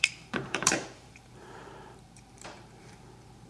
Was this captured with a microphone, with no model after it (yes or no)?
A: no